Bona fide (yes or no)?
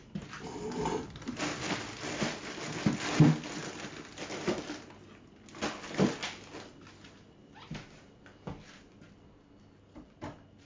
yes